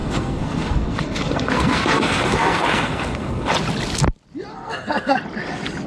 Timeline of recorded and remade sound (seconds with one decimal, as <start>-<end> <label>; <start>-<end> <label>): 0.0-3.5 remade; 3.5-4.5 recorded; 4.5-5.2 remade; 5.2-5.9 recorded